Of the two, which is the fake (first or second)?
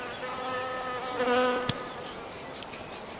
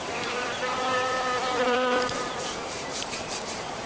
second